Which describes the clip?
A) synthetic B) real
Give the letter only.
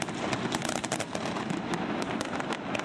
B